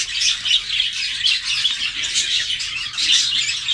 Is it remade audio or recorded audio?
recorded